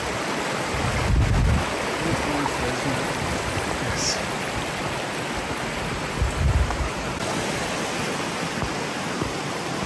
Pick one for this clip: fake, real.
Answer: real